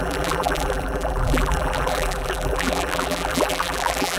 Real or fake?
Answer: fake